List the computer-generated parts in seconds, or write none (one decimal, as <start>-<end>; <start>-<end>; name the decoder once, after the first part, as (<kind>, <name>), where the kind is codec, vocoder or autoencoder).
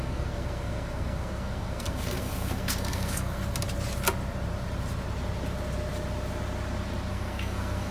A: 0.0-3.4 (codec, SNAC); 7.1-7.9